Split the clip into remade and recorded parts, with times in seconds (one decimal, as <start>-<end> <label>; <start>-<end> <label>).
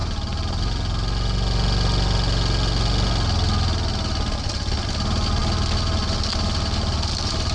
0.0-7.5 recorded